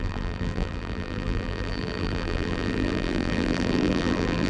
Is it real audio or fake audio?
fake